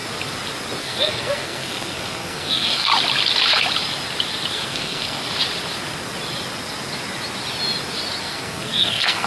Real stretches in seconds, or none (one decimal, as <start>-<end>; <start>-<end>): 0.0-0.8; 2.9-4.5; 5.2-8.2